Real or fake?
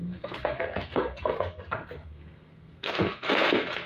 fake